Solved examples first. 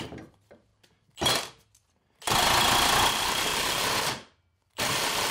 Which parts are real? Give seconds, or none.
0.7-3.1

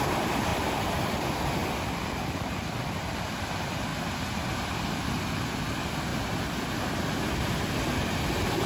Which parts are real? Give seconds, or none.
0.0-0.5; 1.2-1.6; 3.4-6.1; 6.9-8.7

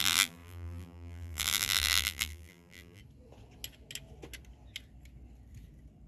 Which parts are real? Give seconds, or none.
3.0-6.1

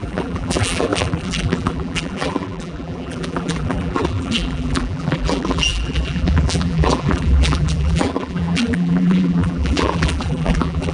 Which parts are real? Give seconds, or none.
none

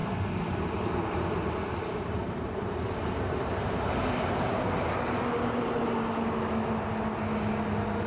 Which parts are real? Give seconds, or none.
4.9-8.1

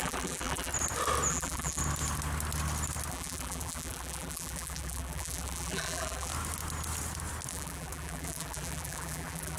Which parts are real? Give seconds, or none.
0.7-1.3; 1.8-3.1; 6.3-7.5